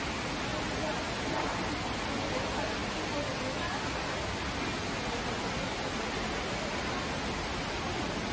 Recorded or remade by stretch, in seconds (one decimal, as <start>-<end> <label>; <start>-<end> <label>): 0.0-8.3 recorded